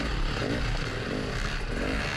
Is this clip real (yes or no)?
yes